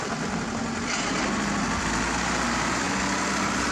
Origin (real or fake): real